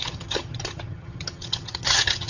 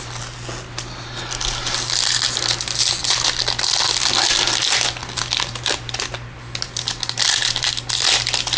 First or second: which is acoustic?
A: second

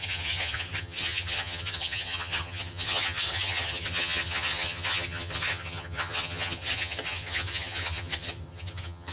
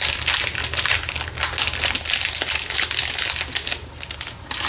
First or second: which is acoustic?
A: second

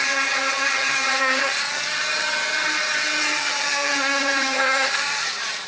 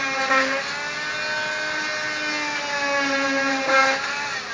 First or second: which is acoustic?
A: second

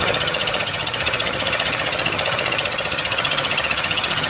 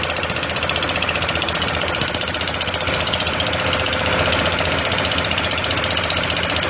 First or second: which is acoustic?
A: second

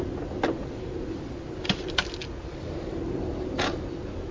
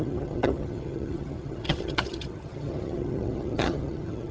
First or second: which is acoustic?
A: first